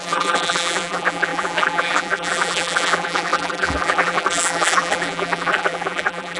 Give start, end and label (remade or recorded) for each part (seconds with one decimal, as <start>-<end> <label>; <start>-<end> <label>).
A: 0.0-6.4 remade